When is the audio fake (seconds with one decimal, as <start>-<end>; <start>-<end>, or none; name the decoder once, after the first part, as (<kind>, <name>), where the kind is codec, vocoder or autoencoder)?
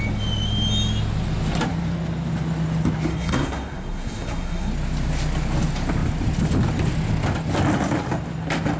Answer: 3.1-4.7 (codec, SNAC)